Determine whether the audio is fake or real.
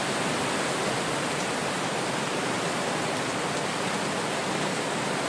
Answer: fake